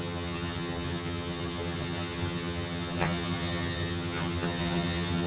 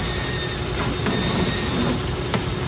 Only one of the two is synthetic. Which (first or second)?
first